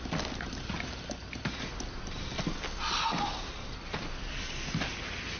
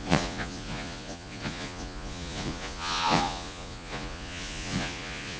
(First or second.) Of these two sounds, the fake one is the second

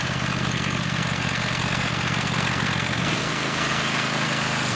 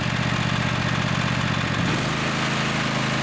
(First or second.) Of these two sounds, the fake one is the first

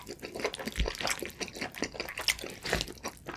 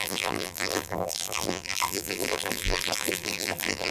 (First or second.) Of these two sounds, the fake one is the second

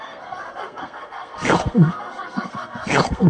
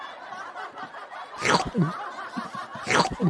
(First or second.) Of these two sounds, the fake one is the first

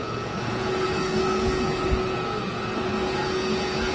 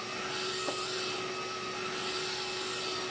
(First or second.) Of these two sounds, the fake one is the first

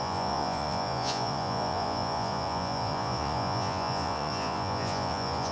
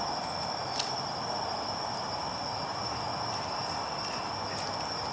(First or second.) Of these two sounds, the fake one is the first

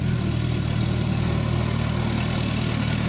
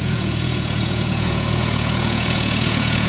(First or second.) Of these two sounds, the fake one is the second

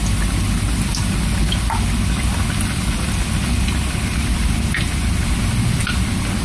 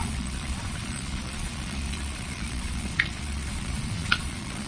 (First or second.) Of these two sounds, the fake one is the second